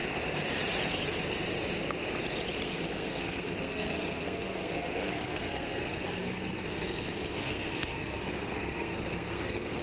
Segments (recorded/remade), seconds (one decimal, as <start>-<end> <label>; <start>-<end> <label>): 0.0-2.6 recorded; 2.6-9.8 remade

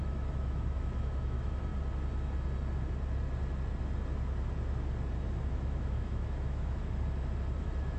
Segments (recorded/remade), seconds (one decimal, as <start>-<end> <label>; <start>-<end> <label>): 0.0-1.7 remade; 1.7-5.5 recorded; 5.5-6.8 remade; 6.8-7.6 recorded; 7.6-8.0 remade